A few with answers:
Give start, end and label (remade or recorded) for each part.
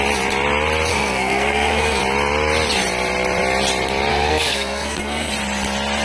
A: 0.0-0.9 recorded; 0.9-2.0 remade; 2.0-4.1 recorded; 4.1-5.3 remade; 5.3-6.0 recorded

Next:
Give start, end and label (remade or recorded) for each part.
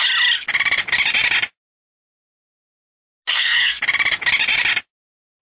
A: 0.0-3.3 recorded; 3.3-3.8 remade; 3.8-5.4 recorded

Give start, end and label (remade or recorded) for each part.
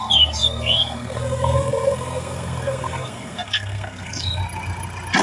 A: 0.0-4.4 remade; 4.4-5.2 recorded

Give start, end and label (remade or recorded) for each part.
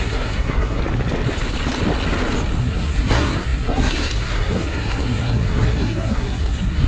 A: 0.0-0.8 remade; 0.8-2.6 recorded; 2.6-6.9 remade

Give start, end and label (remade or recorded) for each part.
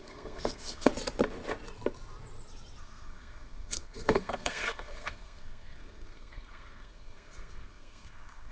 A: 0.0-0.9 remade; 0.9-2.8 recorded; 2.8-8.5 remade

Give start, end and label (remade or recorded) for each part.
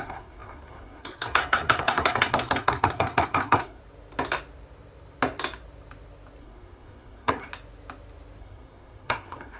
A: 0.0-3.8 remade; 3.8-6.4 recorded; 6.4-7.5 remade; 7.5-8.4 recorded; 8.4-9.6 remade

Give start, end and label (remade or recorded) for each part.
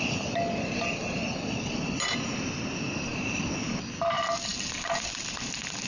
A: 0.0-5.9 recorded